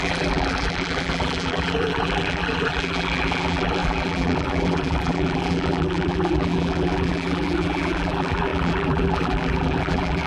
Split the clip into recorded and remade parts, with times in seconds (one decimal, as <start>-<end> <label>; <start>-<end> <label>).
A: 0.0-10.3 remade